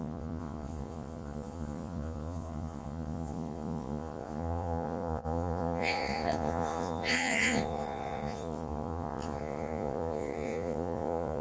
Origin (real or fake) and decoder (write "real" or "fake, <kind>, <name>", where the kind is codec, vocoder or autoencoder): fake, vocoder, Vocos